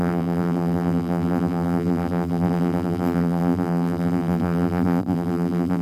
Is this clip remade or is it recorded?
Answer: remade